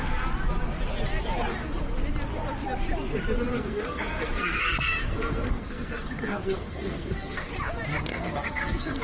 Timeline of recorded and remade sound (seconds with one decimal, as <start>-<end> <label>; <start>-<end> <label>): 0.0-3.5 recorded; 3.5-7.5 remade; 7.5-8.1 recorded; 8.1-9.0 remade